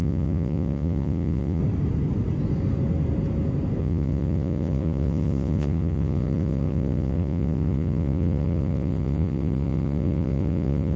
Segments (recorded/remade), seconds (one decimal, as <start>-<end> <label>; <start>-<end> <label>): 0.0-1.6 remade; 1.6-3.8 recorded; 3.8-11.0 remade